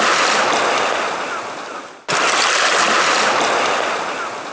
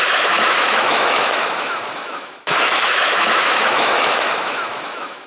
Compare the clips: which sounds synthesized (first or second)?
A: second